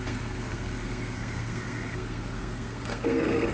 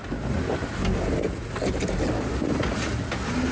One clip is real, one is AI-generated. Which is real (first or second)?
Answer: second